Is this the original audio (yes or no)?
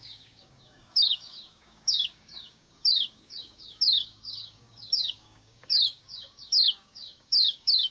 no